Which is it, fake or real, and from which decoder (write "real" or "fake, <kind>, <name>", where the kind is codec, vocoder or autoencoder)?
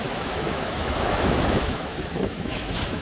fake, autoencoder, DAC-VAE